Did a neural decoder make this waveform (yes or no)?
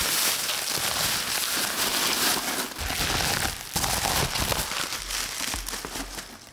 no